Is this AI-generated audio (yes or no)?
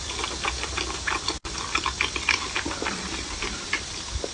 no